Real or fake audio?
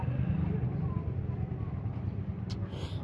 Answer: real